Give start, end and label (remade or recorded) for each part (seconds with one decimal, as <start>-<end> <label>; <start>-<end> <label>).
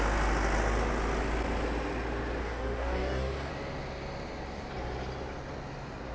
0.0-2.4 recorded; 2.4-3.5 remade; 3.5-6.1 recorded